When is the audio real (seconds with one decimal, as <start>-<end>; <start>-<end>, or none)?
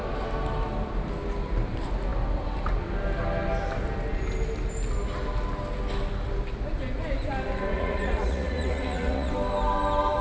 0.0-7.7; 9.3-10.2